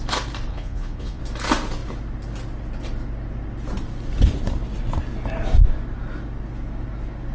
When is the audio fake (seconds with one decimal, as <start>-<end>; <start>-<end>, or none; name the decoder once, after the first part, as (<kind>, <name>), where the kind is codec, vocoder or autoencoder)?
0.5-1.2 (vocoder, Vocos)